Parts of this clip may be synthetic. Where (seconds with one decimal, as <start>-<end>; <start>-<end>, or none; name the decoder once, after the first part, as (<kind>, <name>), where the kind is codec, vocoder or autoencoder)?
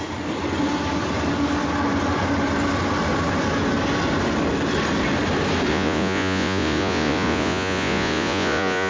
5.7-8.9 (vocoder, Vocos)